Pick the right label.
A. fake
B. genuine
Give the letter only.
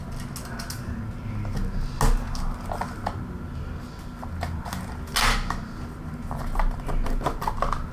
B